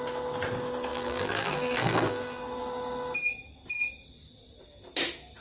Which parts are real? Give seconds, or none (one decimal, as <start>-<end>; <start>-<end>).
0.0-0.9; 2.4-5.4